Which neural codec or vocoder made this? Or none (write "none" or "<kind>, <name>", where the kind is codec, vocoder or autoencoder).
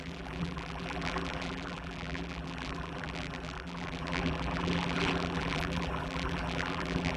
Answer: vocoder, BigVGAN v2